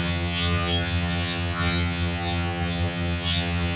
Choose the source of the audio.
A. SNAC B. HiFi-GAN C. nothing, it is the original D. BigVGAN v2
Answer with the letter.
B